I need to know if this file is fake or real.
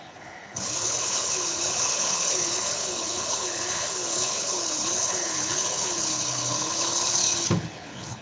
fake